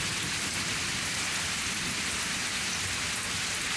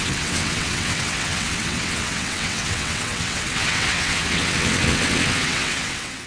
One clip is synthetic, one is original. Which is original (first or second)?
first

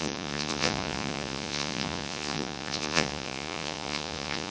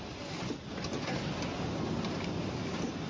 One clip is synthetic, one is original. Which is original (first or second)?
second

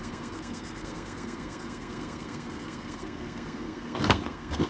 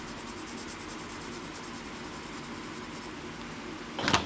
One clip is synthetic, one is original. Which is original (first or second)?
second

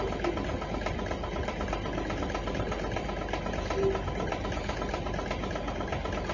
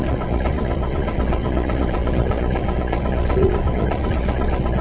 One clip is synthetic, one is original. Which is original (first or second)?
first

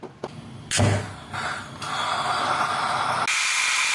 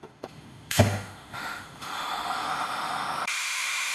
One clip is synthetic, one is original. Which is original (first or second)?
first